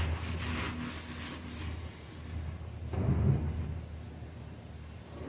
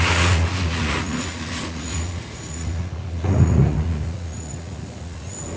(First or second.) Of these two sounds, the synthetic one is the second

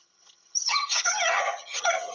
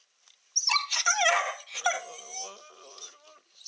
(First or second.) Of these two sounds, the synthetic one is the first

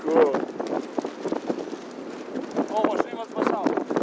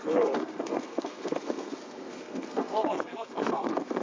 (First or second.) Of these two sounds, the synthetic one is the second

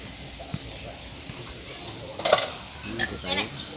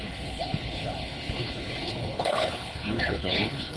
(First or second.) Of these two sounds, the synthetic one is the second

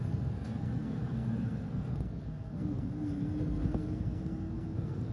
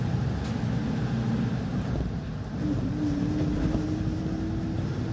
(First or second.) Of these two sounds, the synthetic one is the first